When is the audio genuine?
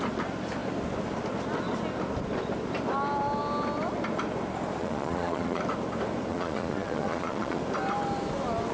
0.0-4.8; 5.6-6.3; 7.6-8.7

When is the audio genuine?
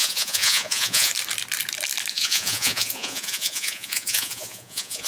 1.1-2.1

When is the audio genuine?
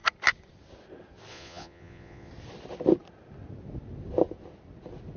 0.0-1.3; 2.3-5.2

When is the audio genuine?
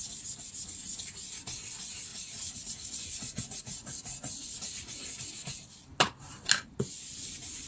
0.0-2.1; 5.3-7.7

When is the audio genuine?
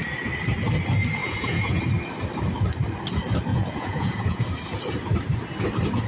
0.0-1.2; 1.8-3.5; 4.4-6.1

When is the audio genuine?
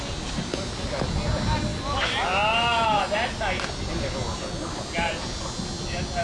0.0-6.2